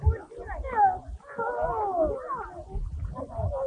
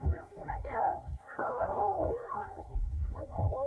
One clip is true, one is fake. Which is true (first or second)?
first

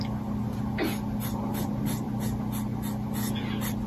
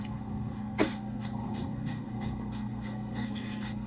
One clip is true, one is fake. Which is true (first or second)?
first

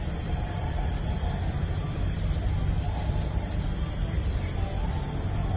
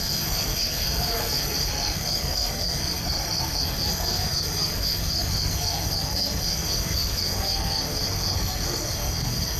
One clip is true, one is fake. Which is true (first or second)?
first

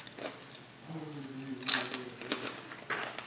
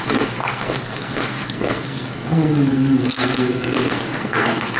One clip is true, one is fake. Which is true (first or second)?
first